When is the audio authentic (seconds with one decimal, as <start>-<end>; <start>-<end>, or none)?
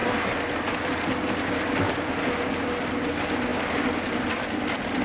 0.0-5.0